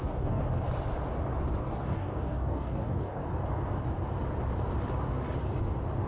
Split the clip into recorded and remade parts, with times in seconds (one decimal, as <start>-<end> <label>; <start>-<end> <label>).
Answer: 0.0-0.4 remade; 0.4-1.6 recorded; 1.6-3.2 remade; 3.2-6.1 recorded